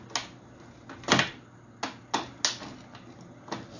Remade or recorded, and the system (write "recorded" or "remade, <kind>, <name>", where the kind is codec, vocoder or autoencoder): recorded